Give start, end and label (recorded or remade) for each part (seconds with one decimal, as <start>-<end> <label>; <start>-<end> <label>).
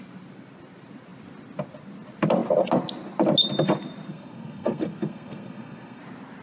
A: 0.0-4.1 recorded; 4.1-6.0 remade; 6.0-6.4 recorded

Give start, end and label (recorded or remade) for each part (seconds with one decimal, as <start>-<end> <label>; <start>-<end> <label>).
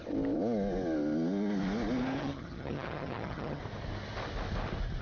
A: 0.0-2.2 recorded; 2.2-3.6 remade; 3.6-5.0 recorded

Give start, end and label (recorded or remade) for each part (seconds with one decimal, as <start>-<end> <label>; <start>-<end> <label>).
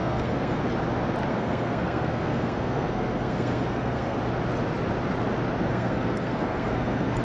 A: 0.0-0.6 remade; 0.6-1.3 recorded; 1.3-4.2 remade; 4.2-5.7 recorded; 5.7-7.2 remade